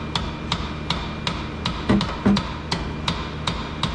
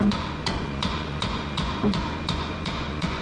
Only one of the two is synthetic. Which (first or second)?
second